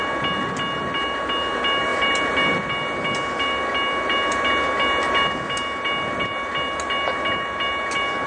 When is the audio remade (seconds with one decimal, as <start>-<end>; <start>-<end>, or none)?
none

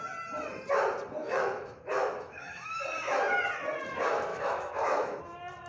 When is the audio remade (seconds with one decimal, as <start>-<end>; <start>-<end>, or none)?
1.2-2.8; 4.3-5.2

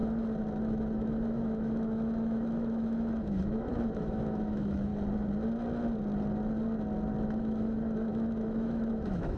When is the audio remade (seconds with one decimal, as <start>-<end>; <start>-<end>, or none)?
0.6-4.9; 7.4-9.4

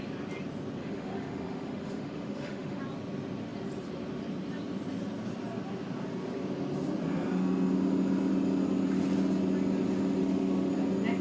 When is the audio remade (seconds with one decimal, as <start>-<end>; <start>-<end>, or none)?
0.8-2.8; 10.2-10.7

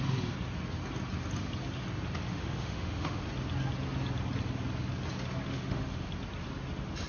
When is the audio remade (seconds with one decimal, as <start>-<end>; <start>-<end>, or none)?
2.3-3.2; 5.5-6.1

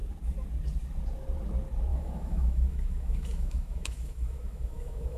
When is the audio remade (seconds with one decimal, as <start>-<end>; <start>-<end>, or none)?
1.9-5.2

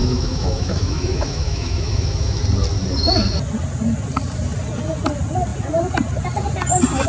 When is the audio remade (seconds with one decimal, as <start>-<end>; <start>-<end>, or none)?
0.0-2.4